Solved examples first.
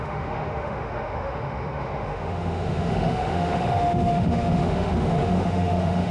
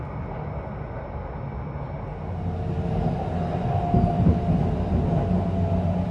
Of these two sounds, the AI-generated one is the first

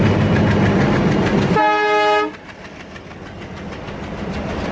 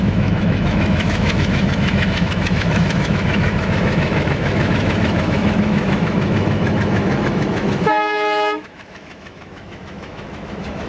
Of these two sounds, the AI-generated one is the second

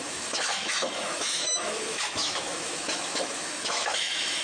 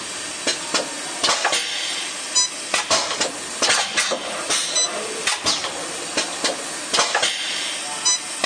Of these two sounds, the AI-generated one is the first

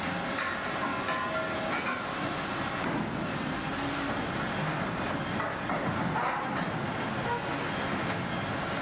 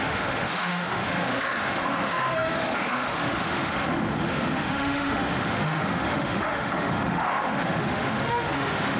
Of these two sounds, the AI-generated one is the second